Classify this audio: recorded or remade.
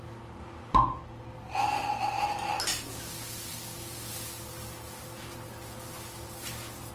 recorded